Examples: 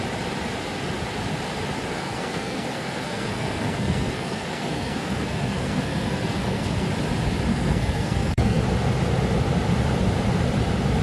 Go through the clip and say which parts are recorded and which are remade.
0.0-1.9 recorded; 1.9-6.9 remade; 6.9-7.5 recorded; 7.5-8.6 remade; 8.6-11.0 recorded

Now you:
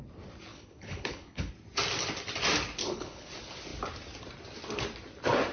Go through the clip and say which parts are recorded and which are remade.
0.0-0.5 recorded; 0.5-1.5 remade; 1.5-2.8 recorded; 2.8-3.3 remade; 3.3-5.5 recorded